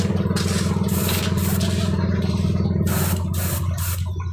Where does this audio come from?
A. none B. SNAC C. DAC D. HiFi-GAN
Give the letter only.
A